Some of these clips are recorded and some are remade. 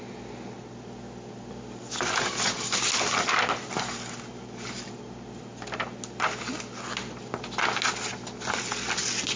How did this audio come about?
recorded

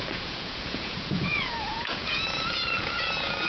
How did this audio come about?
remade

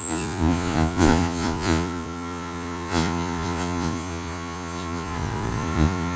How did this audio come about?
remade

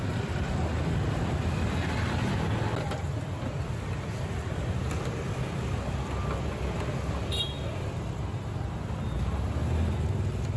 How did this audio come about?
recorded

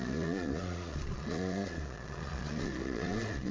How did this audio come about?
remade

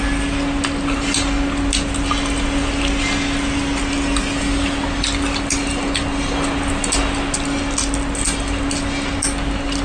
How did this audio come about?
recorded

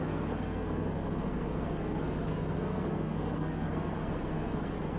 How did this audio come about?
remade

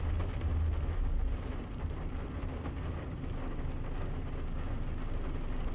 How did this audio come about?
recorded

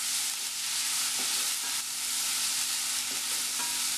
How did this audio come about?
recorded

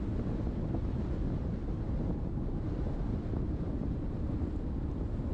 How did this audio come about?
recorded